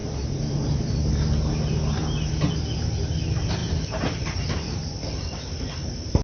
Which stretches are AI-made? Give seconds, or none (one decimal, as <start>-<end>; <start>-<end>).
0.0-1.1; 3.6-4.2